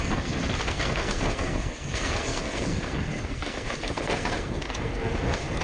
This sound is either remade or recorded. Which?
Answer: remade